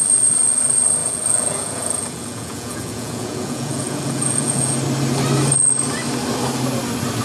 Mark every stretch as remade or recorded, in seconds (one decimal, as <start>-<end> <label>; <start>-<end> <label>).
0.0-1.0 recorded; 1.0-4.7 remade; 4.7-7.2 recorded